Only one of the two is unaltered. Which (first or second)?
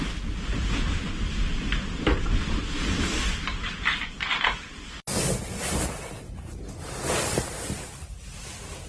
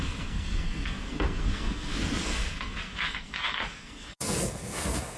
first